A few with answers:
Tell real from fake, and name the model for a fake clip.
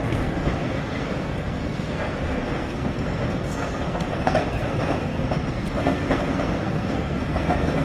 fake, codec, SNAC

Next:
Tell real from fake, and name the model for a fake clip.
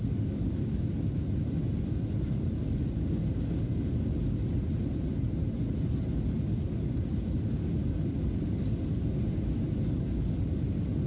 real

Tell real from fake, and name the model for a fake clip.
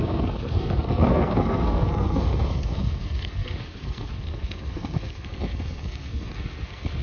fake, codec, SNAC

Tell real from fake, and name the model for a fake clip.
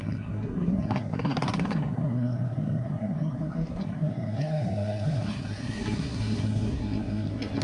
fake, codec, SNAC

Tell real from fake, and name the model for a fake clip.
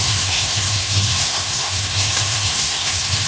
fake, codec, SNAC